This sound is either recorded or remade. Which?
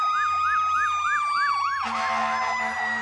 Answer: recorded